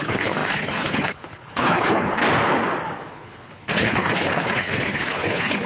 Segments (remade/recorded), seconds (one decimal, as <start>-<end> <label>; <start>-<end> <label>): 0.0-2.2 remade; 2.2-3.1 recorded; 3.1-5.7 remade